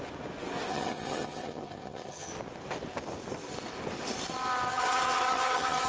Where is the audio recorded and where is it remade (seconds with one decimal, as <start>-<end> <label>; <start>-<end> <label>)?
0.0-0.7 recorded; 0.7-2.3 remade; 2.3-4.7 recorded; 4.7-5.9 remade